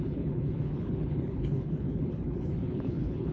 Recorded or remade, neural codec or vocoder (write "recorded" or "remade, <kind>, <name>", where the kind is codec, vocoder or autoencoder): remade, codec, HILCodec